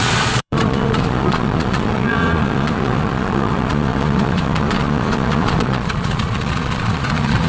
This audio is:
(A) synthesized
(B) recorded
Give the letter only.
A